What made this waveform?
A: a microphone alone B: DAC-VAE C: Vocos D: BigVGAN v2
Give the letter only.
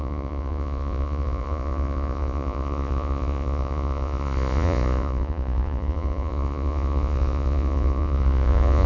C